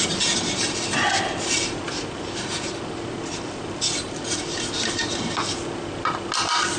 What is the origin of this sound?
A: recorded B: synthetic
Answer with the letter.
A